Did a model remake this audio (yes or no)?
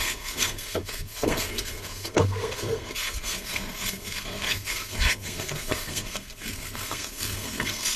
yes